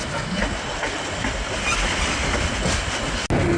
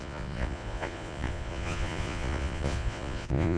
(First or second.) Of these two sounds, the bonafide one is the first